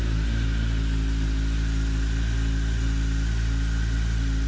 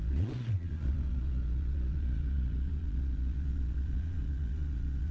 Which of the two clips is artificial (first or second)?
second